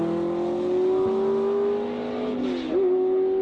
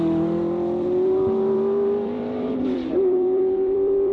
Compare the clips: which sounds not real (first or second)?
second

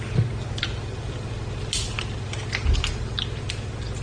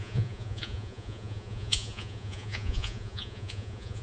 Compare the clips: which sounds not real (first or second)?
second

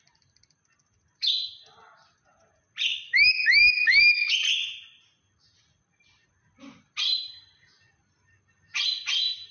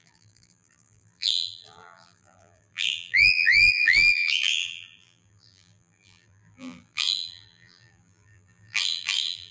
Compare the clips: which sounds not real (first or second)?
second